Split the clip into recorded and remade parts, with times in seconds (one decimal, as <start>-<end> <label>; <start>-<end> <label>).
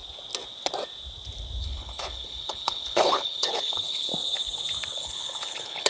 0.0-1.6 recorded; 1.6-4.1 remade; 4.1-4.9 recorded; 4.9-5.9 remade